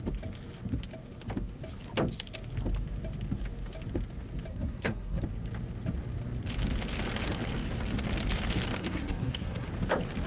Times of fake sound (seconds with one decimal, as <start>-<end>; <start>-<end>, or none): 4.5-5.2; 8.8-9.7